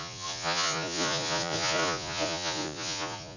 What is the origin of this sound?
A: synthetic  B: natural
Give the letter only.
A